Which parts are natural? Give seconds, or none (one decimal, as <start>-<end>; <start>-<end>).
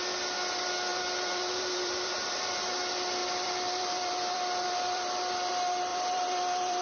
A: 0.0-0.9; 2.7-3.2; 5.5-5.9